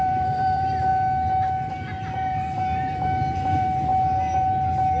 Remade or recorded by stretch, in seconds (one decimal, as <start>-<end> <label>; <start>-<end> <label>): 0.0-0.9 remade; 0.9-1.7 recorded; 1.7-3.9 remade; 3.9-5.0 recorded